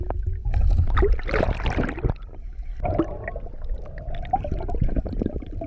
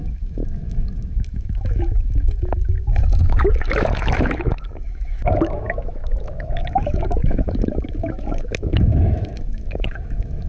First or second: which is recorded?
first